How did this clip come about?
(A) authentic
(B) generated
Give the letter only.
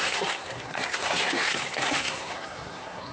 B